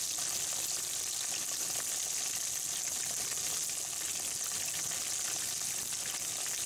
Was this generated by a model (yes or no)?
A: no